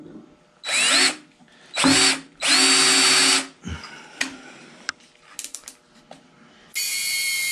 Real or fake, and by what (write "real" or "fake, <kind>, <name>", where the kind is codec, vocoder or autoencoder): real